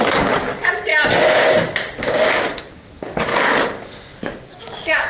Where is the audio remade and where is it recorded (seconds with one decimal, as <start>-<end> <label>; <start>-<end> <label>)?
0.0-0.9 remade; 0.9-2.7 recorded; 2.7-3.3 remade; 3.3-4.1 recorded; 4.1-5.1 remade